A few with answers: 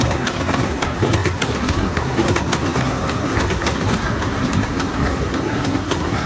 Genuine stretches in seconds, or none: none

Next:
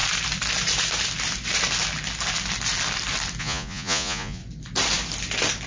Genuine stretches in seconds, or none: 0.0-3.4; 4.4-5.7